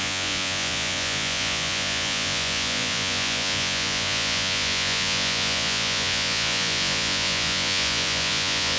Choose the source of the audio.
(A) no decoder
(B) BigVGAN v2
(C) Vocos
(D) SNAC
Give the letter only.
C